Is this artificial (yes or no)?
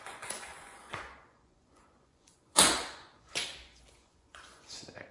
yes